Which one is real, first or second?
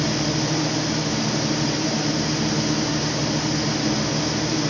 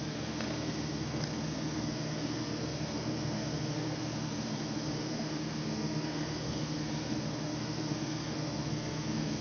first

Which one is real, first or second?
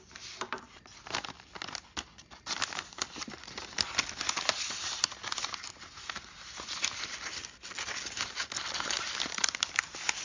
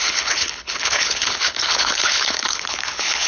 first